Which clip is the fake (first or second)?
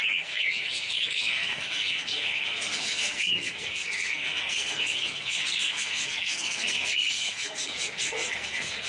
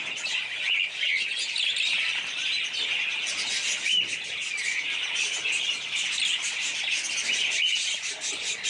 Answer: first